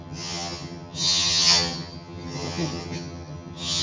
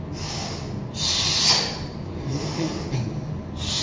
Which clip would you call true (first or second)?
second